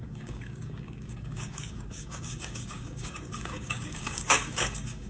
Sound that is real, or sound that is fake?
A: fake